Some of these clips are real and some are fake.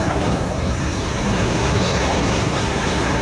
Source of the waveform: fake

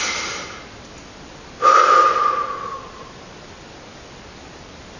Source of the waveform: real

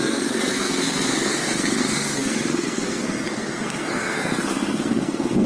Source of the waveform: fake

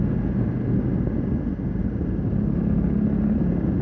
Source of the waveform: real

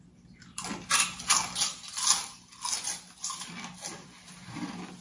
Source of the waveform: real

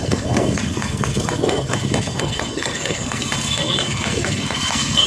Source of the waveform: fake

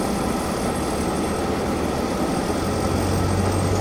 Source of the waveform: real